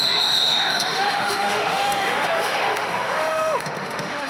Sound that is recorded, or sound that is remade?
remade